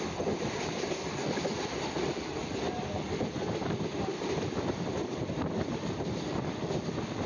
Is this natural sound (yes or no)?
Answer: no